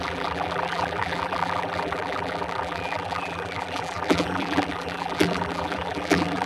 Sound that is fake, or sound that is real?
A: fake